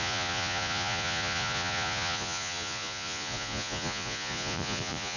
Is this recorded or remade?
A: remade